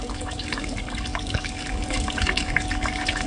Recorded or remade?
remade